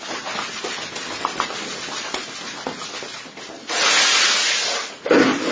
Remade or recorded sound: recorded